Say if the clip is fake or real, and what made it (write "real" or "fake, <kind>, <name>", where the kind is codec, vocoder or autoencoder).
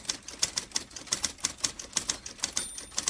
real